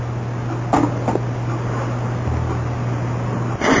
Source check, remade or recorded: recorded